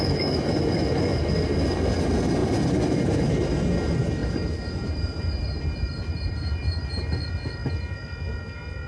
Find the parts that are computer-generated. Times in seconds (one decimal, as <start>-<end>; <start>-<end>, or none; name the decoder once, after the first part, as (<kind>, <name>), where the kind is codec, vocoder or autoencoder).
1.1-1.8 (vocoder, BigVGAN v2); 4.2-7.1